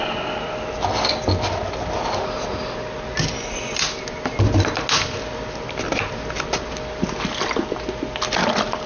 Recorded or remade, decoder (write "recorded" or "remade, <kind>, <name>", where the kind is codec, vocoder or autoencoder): recorded